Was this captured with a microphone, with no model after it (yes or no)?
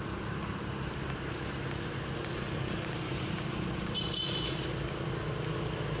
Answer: yes